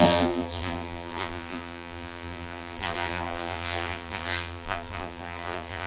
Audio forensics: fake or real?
fake